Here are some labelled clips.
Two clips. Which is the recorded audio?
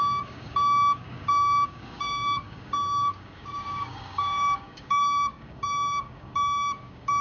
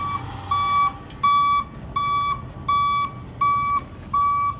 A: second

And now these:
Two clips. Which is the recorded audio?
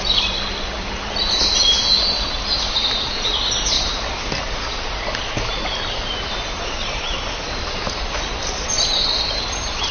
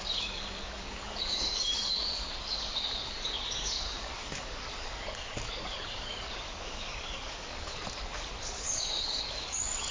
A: first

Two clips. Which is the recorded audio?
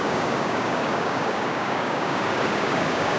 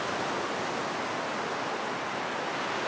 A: second